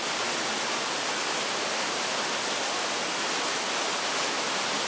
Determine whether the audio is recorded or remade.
recorded